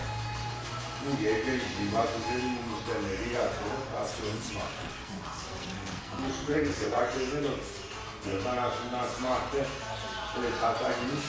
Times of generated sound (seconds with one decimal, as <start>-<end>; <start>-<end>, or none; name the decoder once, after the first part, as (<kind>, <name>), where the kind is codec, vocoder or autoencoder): 4.7-7.0 (codec, SNAC)